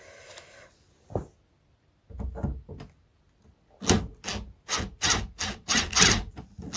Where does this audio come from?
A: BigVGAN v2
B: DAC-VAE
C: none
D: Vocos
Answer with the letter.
C